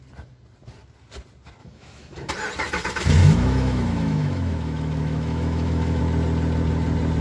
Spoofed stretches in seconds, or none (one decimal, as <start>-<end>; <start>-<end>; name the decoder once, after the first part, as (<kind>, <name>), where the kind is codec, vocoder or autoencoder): 1.6-2.3 (autoencoder, DAC-VAE); 3.2-6.0